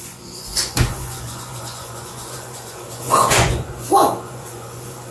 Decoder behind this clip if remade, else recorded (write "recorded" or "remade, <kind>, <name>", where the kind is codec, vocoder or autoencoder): remade, vocoder, Vocos